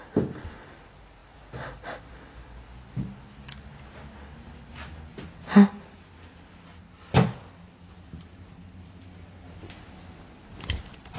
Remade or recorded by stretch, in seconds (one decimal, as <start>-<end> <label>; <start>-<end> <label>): 0.0-11.2 recorded